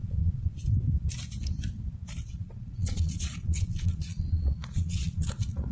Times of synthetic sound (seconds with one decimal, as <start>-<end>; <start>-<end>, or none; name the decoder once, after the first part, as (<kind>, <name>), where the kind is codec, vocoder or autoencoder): 0.0-0.6 (vocoder, Vocos); 2.2-5.7